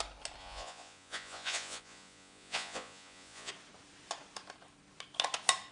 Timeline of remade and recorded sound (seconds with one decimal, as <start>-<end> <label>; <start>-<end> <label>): 0.0-0.4 recorded; 0.4-3.5 remade; 3.5-5.7 recorded